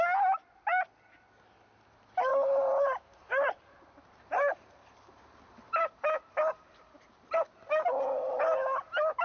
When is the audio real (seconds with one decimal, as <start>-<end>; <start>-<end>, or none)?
0.0-2.3; 7.4-9.2